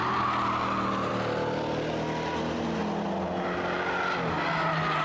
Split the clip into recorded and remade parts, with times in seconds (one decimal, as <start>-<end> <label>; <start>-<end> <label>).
0.0-5.0 recorded